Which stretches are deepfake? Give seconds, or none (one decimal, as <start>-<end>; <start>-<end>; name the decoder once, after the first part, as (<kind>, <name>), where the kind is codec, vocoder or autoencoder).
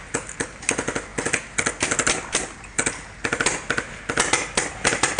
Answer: none